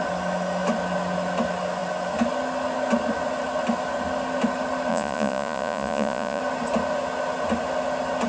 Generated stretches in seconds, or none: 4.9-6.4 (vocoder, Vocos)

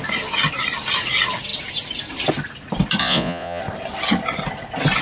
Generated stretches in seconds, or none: 3.0-3.6 (vocoder, Vocos)

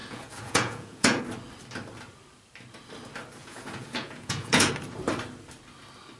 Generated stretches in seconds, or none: 0.0-1.2 (vocoder, Vocos); 3.4-4.7

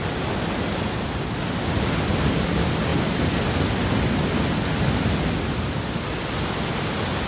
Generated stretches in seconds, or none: none

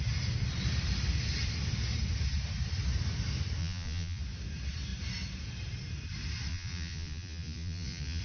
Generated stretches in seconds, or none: 3.6-4.2 (vocoder, Vocos); 6.5-8.2